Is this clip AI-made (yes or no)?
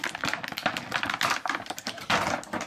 no